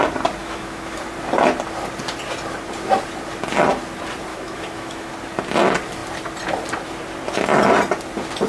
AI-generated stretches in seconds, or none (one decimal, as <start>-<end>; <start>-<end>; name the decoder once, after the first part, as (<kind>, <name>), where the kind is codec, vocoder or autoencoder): 0.4-1.0 (autoencoder, DAC-VAE); 4.3-5.1